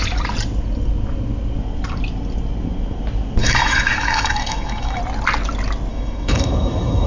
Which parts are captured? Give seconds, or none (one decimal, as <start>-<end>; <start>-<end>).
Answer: 0.0-3.4; 5.0-5.9